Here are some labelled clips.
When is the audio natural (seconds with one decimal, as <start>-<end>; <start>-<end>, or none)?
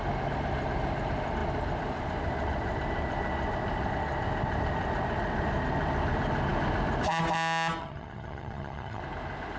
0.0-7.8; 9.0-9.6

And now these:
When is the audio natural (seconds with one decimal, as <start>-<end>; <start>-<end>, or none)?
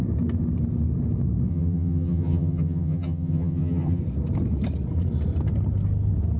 0.0-1.5; 4.0-6.4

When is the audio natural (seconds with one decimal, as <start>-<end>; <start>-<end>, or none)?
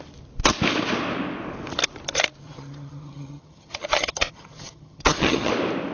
0.0-2.4; 5.5-5.9